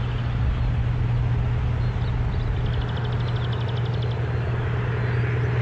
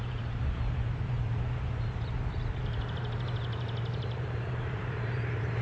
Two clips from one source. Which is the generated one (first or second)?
second